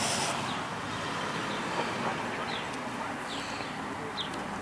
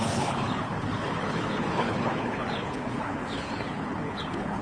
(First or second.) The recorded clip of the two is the first